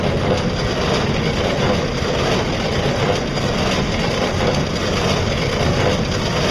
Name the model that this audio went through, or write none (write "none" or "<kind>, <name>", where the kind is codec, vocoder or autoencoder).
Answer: none